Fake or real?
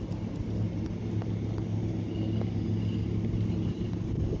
real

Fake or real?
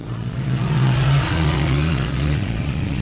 fake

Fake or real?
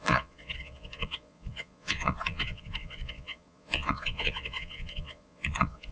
fake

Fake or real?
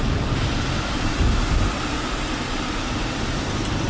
real